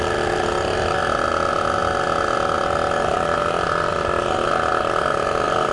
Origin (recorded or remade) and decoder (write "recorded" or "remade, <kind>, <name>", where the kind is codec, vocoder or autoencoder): recorded